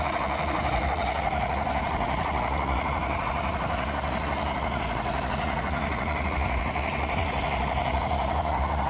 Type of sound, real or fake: fake